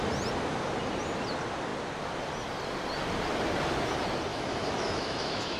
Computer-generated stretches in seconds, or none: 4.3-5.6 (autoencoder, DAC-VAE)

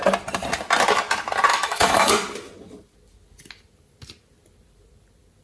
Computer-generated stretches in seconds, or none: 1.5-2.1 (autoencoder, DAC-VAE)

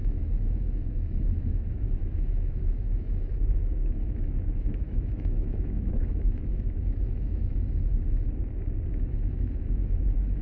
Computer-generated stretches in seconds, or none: 0.0-7.9 (autoencoder, DAC-VAE); 8.9-10.4

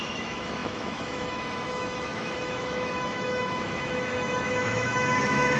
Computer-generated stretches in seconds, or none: 0.0-5.6 (autoencoder, DAC-VAE)